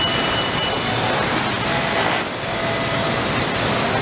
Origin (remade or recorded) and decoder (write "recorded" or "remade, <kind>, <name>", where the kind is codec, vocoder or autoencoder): recorded